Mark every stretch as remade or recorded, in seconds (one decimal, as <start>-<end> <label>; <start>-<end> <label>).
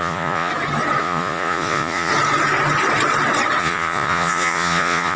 0.0-0.5 remade; 0.5-1.0 recorded; 1.0-2.1 remade; 2.1-3.6 recorded; 3.6-5.2 remade